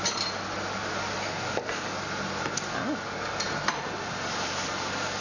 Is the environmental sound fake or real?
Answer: real